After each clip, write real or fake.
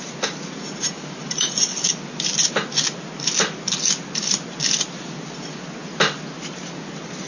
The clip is real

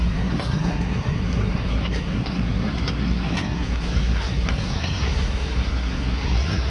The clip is fake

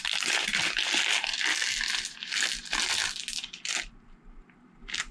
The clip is real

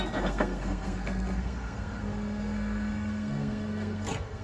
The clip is fake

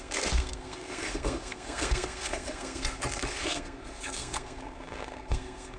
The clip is fake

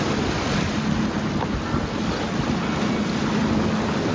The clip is real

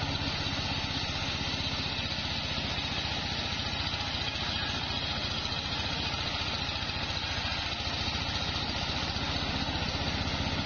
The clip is real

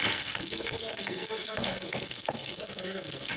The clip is fake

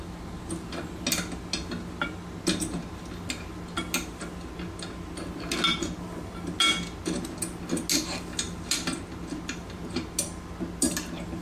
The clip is real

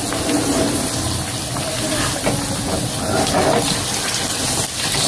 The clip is real